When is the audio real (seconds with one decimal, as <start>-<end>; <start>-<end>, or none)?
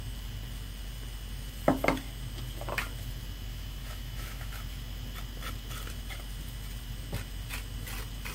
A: 0.0-3.5; 4.5-8.3